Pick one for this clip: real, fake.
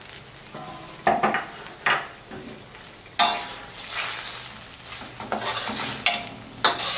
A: real